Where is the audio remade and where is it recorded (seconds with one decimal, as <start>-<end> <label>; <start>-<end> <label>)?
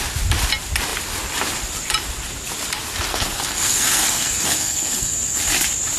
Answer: 0.0-3.1 recorded; 3.1-5.4 remade; 5.4-6.0 recorded